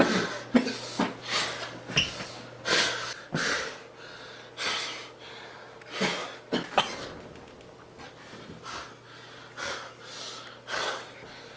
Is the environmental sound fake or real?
real